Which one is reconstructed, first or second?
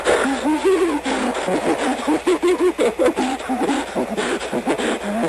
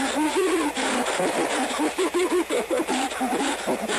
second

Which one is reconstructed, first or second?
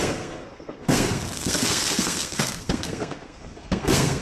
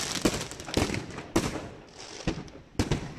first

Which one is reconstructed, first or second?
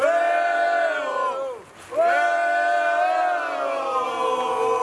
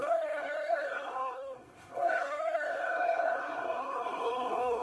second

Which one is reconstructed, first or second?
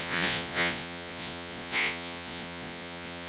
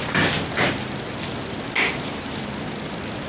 first